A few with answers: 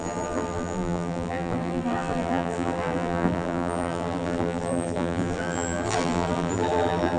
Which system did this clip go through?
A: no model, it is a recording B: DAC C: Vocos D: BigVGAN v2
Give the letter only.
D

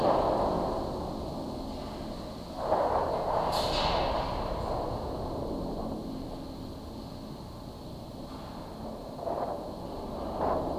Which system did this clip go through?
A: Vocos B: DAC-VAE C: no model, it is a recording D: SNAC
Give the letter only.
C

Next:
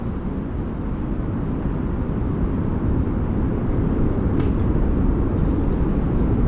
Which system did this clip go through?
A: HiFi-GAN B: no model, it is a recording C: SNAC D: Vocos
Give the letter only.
B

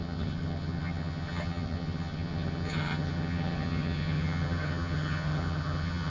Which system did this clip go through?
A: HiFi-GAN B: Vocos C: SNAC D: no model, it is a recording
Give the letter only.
A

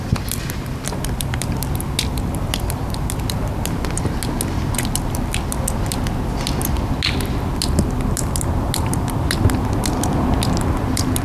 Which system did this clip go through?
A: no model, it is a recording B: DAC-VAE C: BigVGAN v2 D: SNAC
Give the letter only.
A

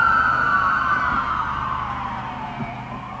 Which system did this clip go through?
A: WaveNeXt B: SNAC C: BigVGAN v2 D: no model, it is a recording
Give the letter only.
D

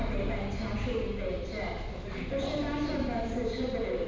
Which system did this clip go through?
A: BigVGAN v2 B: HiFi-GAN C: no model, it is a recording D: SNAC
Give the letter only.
C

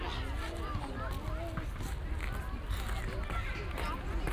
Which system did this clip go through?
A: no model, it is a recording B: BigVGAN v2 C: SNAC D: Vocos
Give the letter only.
A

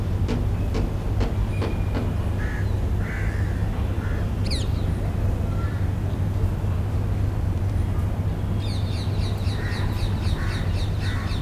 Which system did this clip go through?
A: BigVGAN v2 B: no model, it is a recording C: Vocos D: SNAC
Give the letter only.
B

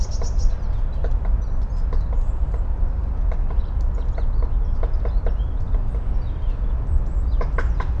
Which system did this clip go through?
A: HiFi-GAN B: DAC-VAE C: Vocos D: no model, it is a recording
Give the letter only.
D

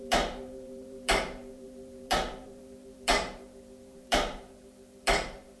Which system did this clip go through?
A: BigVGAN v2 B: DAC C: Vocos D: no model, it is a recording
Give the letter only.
A